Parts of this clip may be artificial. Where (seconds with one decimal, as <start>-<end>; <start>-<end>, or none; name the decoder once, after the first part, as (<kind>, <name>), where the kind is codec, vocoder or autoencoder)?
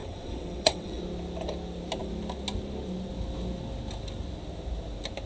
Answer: 0.0-1.0 (vocoder, WaveNeXt)